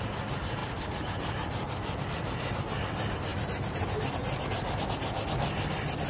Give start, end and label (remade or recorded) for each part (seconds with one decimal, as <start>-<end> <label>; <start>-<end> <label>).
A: 0.0-0.6 recorded; 0.6-2.0 remade; 2.0-3.3 recorded; 3.3-3.9 remade; 3.9-6.1 recorded